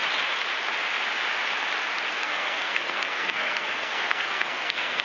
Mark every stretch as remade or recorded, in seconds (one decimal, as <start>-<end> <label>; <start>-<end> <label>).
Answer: 0.0-2.1 recorded; 2.1-5.0 remade